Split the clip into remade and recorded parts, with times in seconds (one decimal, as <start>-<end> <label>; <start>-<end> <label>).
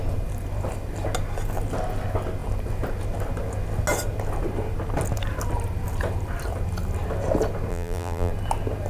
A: 0.0-7.7 recorded; 7.7-8.3 remade; 8.3-8.9 recorded